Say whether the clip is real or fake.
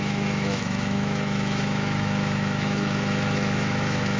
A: fake